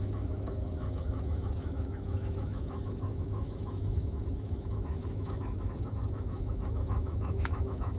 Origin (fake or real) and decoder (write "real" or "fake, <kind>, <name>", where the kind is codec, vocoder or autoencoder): fake, autoencoder, DAC-VAE